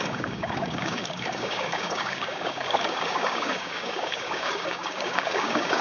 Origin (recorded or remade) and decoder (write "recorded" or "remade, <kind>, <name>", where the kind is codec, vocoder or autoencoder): remade, codec, DAC